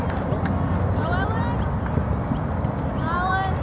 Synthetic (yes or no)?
no